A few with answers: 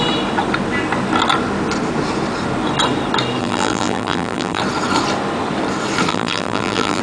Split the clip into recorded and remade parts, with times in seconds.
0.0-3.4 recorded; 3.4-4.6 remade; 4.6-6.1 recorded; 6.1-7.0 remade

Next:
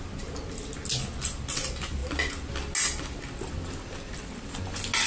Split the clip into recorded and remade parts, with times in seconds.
0.0-5.1 recorded

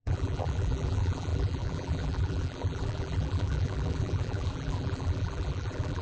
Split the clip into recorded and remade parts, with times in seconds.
0.0-6.0 remade